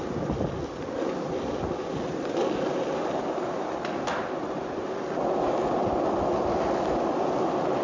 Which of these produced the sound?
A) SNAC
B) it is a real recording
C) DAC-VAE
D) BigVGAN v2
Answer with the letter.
B